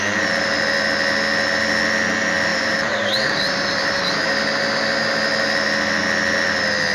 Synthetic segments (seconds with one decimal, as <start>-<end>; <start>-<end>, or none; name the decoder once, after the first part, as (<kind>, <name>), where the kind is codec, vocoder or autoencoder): 2.5-3.5 (vocoder, BigVGAN v2)